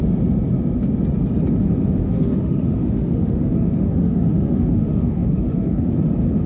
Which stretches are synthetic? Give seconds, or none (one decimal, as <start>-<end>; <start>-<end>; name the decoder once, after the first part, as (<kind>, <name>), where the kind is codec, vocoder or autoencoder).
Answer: 2.0-5.9 (autoencoder, DAC-VAE)